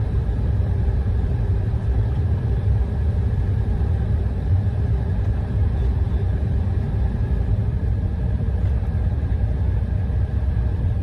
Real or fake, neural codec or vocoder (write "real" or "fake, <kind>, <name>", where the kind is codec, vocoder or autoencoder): fake, vocoder, BigVGAN v2